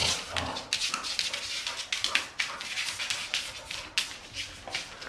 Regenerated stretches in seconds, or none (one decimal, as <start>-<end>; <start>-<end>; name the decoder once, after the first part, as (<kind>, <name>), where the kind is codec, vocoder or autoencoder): none